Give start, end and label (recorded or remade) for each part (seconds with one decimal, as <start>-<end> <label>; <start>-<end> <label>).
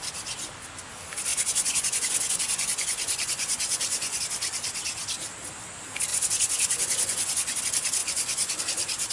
0.0-1.3 recorded; 1.3-4.2 remade; 4.2-6.1 recorded; 6.1-7.6 remade; 7.6-8.0 recorded; 8.0-8.6 remade; 8.6-9.1 recorded